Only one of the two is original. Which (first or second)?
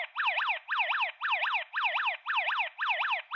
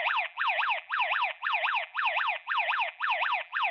first